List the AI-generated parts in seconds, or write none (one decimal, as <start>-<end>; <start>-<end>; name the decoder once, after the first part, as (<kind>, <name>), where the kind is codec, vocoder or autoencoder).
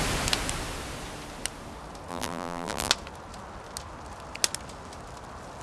2.1-2.9 (vocoder, BigVGAN v2)